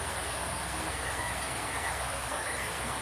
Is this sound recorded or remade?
remade